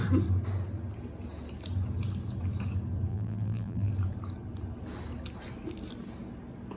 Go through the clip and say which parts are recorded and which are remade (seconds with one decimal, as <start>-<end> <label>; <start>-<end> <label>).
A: 0.0-3.1 recorded; 3.1-3.9 remade; 3.9-6.8 recorded